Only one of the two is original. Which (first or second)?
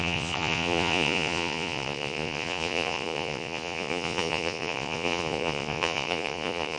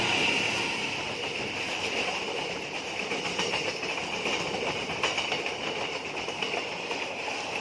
second